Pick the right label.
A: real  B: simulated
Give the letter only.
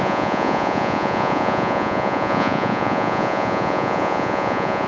B